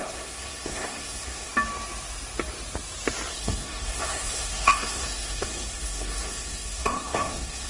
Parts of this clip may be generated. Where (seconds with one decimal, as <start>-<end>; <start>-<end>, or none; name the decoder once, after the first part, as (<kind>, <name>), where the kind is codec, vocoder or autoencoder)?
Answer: 0.0-1.5 (codec, SNAC); 3.3-7.7